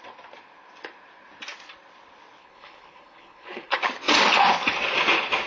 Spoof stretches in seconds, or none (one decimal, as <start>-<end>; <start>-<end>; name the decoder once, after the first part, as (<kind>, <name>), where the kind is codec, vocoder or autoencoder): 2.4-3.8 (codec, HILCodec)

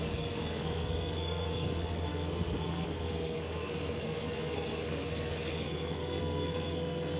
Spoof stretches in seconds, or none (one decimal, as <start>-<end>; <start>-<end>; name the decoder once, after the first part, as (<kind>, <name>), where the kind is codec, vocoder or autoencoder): 0.0-7.2 (codec, SNAC)

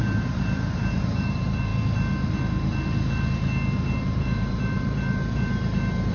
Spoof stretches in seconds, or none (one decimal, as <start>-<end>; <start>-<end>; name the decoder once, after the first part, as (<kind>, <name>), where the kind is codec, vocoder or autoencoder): 0.0-1.7 (vocoder, BigVGAN v2); 4.0-6.1

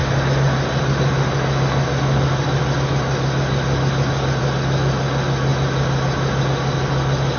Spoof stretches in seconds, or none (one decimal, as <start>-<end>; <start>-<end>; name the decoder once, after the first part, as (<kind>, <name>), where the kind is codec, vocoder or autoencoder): none

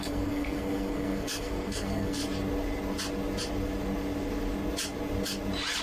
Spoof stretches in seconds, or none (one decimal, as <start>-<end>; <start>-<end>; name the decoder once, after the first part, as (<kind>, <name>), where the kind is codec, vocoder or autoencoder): 0.0-2.2 (codec, SNAC)

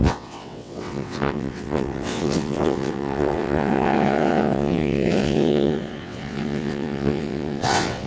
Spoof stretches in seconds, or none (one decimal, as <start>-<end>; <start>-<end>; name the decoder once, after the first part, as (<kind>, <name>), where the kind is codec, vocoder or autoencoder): 0.0-8.1 (vocoder, WaveNeXt)